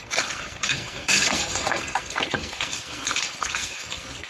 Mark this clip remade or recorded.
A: remade